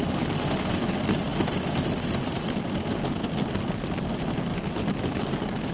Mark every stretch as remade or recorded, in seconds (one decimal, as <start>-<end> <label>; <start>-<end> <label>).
0.0-5.7 recorded